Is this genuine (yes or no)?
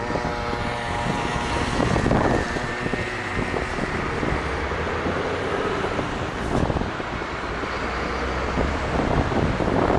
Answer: no